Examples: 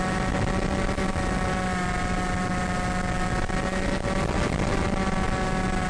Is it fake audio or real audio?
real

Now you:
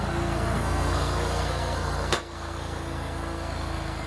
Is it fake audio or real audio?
fake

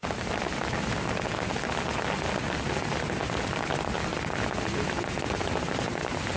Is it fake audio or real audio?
real